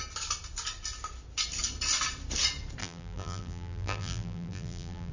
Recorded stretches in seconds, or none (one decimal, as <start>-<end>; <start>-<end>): 0.0-2.8